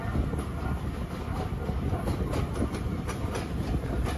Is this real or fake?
real